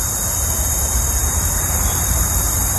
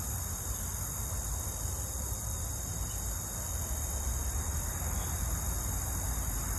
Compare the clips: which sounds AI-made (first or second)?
first